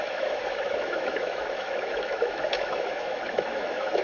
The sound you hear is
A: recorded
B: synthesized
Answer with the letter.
B